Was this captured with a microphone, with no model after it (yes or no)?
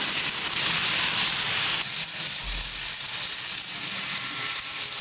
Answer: yes